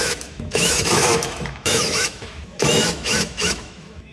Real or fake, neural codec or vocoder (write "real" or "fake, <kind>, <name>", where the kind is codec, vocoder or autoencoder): fake, autoencoder, DAC-VAE